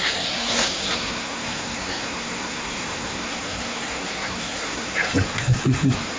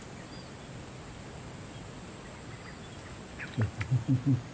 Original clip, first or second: second